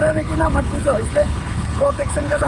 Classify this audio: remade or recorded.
remade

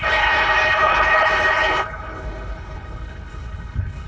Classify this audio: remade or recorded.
remade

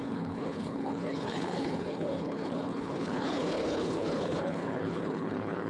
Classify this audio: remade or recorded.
remade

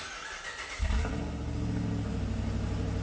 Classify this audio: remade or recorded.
recorded